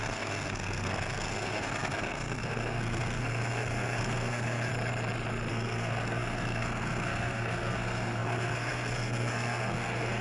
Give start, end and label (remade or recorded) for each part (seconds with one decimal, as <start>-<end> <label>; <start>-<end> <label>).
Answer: 0.0-4.7 remade; 4.7-5.5 recorded; 5.5-10.2 remade